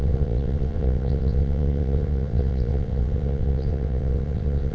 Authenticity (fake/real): fake